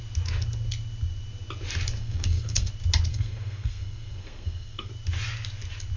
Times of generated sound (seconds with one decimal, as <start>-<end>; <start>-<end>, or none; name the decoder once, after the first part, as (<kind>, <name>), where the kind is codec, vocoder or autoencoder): 2.0-2.7 (codec, SNAC); 3.1-4.9